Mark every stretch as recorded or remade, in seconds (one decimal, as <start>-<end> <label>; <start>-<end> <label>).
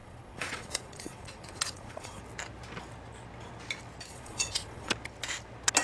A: 0.0-2.2 remade; 2.2-4.1 recorded; 4.1-4.9 remade; 4.9-5.8 recorded